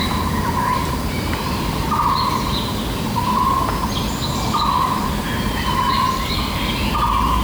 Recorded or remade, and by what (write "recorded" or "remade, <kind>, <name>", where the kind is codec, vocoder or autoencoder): recorded